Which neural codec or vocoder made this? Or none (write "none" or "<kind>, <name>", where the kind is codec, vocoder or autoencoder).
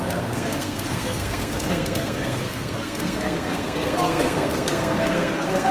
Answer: codec, SNAC